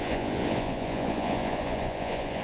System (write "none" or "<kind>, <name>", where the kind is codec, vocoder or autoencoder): vocoder, Vocos